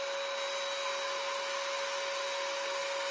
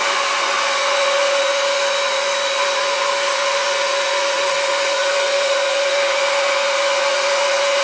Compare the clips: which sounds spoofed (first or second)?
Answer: second